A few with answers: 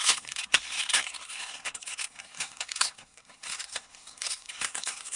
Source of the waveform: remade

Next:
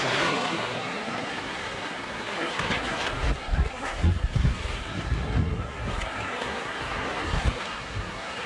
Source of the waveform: remade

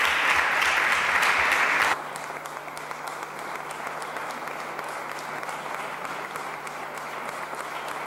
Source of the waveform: recorded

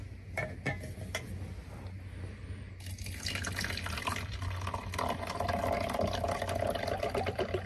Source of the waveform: recorded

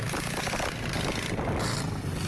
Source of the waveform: recorded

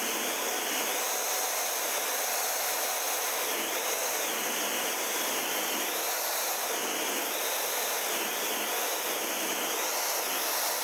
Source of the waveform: recorded